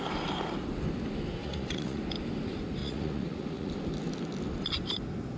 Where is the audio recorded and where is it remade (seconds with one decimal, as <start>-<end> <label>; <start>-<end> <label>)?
0.0-1.4 recorded; 1.4-2.0 remade; 2.0-2.8 recorded; 2.8-3.7 remade; 3.7-5.4 recorded